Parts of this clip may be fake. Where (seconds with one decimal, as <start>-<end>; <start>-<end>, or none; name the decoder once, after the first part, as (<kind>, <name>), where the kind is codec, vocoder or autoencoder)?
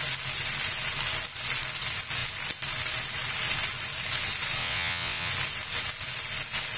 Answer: 4.6-5.3 (vocoder, WaveNeXt)